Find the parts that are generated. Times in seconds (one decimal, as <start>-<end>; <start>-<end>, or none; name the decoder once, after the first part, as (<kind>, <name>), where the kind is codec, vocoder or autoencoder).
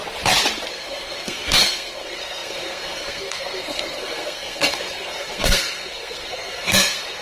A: 0.7-7.2 (codec, SNAC)